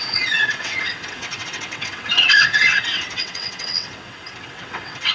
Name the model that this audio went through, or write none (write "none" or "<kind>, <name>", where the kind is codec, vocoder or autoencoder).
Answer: vocoder, WaveNeXt